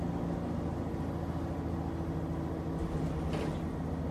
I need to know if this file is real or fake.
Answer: real